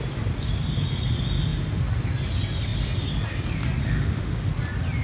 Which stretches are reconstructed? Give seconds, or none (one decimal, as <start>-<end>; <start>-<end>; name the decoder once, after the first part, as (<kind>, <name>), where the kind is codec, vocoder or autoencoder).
3.8-4.5 (autoencoder, DAC-VAE)